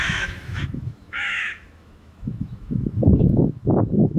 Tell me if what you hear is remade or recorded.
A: remade